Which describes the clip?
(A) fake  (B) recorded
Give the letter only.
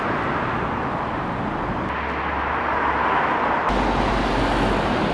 B